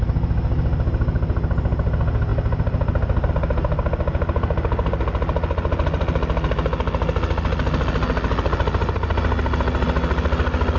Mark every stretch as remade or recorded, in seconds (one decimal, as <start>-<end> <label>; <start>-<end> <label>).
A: 0.0-10.8 recorded